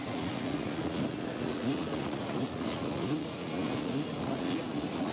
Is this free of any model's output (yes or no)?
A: no